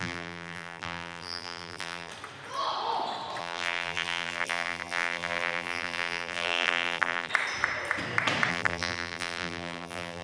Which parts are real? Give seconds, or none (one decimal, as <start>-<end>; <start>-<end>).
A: 2.1-3.4; 7.3-8.5